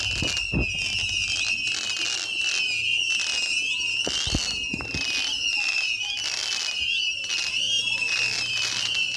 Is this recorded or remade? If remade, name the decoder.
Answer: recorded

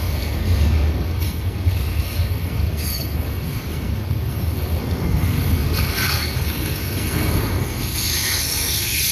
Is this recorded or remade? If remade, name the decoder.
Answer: remade, codec, SNAC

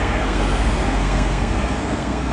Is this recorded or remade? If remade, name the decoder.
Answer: remade, codec, SNAC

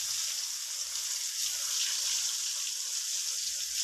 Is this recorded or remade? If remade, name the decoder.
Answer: recorded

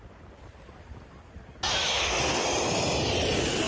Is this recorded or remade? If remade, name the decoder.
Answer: recorded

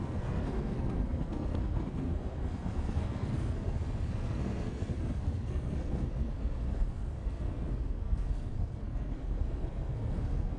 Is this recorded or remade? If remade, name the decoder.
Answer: remade, codec, SNAC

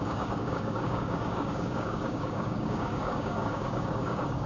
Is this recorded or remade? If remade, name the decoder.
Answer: remade, codec, DAC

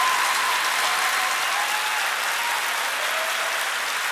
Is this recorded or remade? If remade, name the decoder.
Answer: recorded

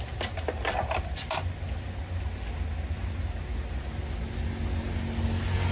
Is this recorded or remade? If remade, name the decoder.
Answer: recorded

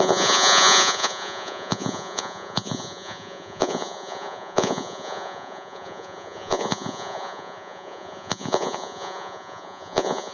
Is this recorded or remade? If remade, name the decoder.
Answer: remade, vocoder, Vocos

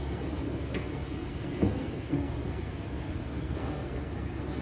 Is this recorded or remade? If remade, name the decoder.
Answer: remade, codec, SNAC